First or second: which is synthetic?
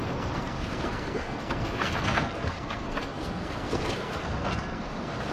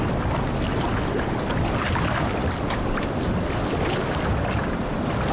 first